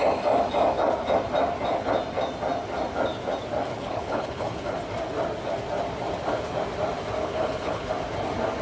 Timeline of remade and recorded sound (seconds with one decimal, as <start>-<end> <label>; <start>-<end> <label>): 0.0-3.7 recorded; 3.7-4.8 remade; 4.8-7.2 recorded; 7.2-7.9 remade; 7.9-8.6 recorded